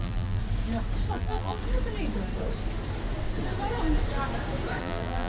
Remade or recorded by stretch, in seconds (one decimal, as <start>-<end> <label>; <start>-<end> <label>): 0.0-0.4 remade; 0.4-1.1 recorded; 1.1-1.6 remade; 1.6-4.8 recorded; 4.8-5.3 remade